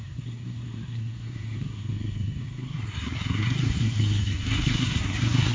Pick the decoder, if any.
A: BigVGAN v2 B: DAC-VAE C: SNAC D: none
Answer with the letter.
C